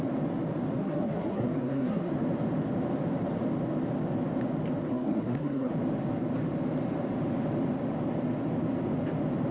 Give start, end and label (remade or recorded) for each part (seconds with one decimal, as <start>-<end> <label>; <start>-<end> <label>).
0.0-0.8 recorded; 0.8-2.1 remade; 2.1-4.9 recorded; 4.9-5.7 remade; 5.7-9.5 recorded